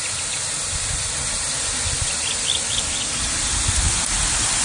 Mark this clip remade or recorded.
recorded